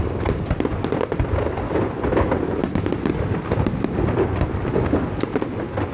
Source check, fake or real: real